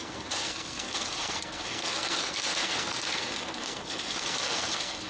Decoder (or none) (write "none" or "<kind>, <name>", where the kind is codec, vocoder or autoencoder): codec, SNAC